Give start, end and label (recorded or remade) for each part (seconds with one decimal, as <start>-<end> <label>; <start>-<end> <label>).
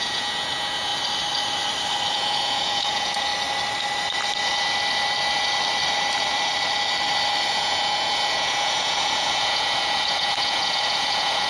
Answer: 0.0-0.9 remade; 0.9-2.1 recorded; 2.1-3.3 remade; 3.3-7.5 recorded; 7.5-11.5 remade